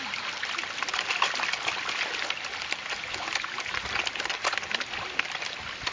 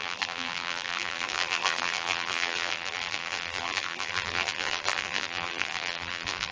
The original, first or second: first